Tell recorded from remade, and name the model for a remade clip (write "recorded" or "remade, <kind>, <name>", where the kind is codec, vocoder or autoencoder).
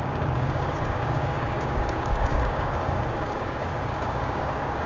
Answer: remade, codec, DAC